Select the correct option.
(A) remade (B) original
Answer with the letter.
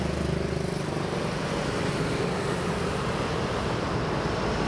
B